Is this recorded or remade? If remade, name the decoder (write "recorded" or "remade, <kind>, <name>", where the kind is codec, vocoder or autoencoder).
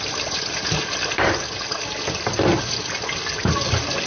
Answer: recorded